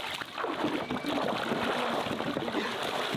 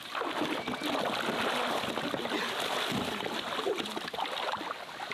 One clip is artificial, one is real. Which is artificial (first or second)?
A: second